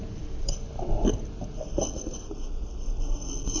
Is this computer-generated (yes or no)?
no